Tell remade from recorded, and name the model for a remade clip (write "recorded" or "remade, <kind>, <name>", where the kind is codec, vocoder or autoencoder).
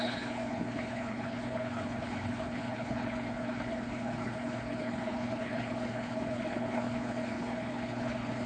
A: remade, codec, HILCodec